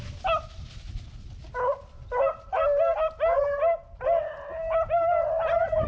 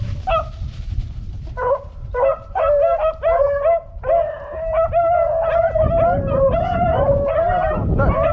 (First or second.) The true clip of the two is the first